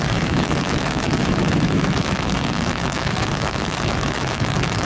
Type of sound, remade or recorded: remade